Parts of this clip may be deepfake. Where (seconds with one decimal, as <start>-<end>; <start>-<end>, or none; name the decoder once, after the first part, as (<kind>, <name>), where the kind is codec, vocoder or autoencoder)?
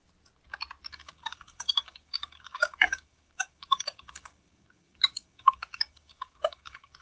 0.9-7.0 (codec, DAC)